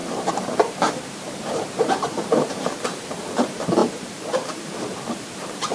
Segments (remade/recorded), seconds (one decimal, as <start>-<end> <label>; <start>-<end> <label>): 0.0-5.7 remade